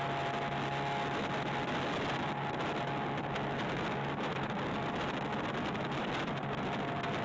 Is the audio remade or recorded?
recorded